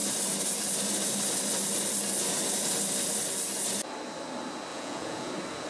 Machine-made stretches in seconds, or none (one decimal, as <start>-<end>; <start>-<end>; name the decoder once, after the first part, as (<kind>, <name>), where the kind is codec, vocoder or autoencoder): 4.7-5.3 (vocoder, Vocos)